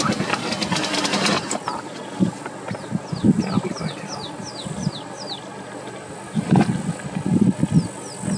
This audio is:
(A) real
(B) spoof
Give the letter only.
A